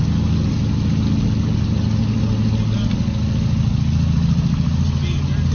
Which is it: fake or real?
real